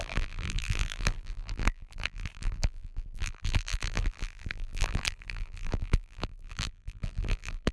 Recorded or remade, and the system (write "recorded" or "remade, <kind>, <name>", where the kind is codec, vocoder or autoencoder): remade, vocoder, BigVGAN v2